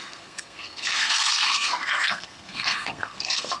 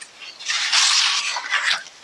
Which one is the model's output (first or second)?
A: first